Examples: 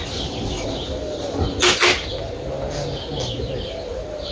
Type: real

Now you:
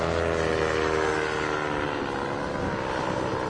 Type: real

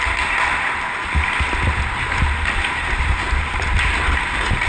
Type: real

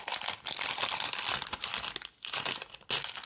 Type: real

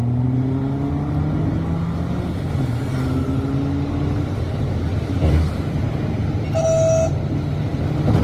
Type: real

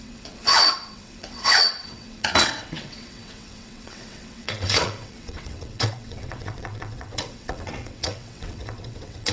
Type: fake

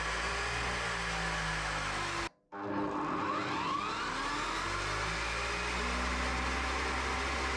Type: real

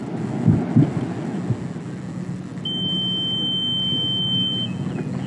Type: real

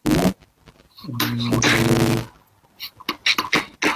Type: real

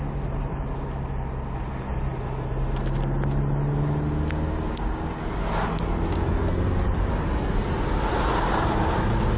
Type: real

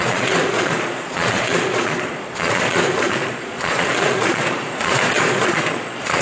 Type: fake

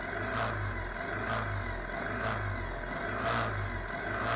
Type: real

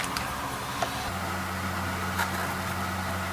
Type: real